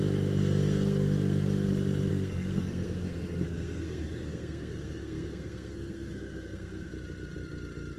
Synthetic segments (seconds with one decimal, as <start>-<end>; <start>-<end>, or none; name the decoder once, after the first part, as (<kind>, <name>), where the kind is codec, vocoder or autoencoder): 0.4-1.7 (codec, SNAC); 2.1-6.9